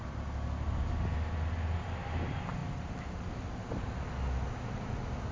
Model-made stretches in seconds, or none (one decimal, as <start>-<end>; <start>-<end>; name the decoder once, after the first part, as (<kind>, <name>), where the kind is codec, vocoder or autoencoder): none